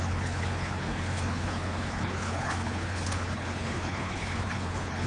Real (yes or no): no